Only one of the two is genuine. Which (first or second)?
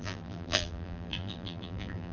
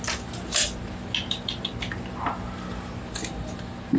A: second